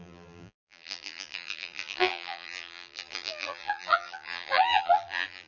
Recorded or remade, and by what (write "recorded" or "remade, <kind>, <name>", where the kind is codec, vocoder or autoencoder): remade, vocoder, BigVGAN v2